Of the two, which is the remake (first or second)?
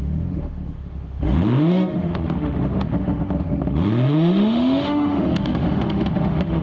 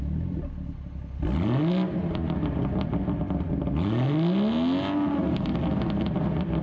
first